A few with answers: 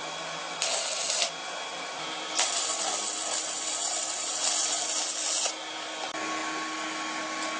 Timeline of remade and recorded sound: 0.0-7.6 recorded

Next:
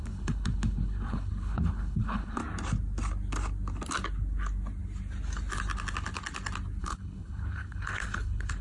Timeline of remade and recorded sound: 0.0-2.4 remade; 2.4-6.8 recorded; 6.8-8.6 remade

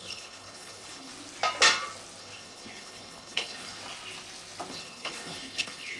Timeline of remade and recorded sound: 0.0-1.1 remade; 1.1-2.2 recorded; 2.2-3.8 remade; 3.8-4.7 recorded; 4.7-6.0 remade